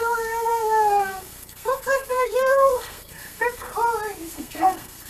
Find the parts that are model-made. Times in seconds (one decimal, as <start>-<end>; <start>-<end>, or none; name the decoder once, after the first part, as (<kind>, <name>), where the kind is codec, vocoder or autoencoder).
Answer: 0.0-3.7 (codec, SNAC); 4.3-5.1